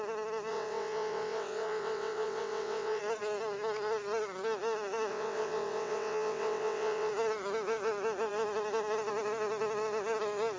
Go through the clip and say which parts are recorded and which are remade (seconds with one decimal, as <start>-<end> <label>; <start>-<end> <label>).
0.0-0.5 recorded; 0.5-3.0 remade; 3.0-5.1 recorded; 5.1-7.1 remade; 7.1-10.6 recorded